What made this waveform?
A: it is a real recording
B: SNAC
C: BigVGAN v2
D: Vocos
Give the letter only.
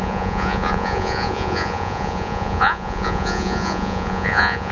D